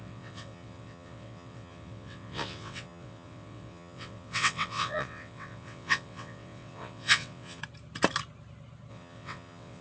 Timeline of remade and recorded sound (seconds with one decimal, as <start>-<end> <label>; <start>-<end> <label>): 0.0-7.6 remade; 7.6-8.9 recorded; 8.9-9.8 remade